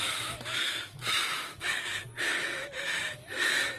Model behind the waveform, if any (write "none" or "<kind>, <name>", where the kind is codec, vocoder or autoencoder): autoencoder, DAC-VAE